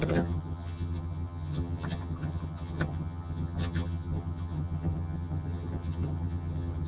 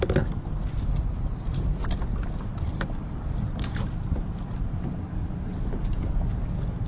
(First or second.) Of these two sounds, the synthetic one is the first